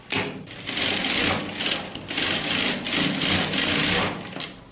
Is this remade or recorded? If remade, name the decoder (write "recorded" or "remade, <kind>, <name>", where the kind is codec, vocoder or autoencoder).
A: recorded